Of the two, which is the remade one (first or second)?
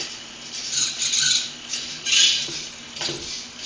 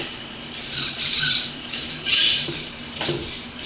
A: second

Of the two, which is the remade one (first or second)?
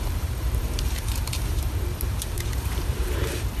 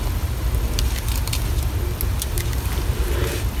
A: first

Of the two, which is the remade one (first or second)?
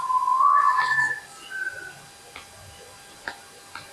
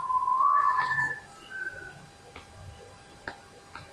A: second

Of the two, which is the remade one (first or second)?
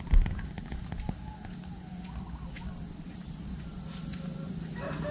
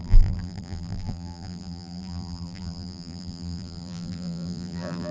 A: second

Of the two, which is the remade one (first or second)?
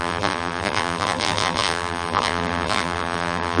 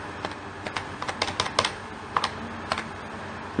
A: first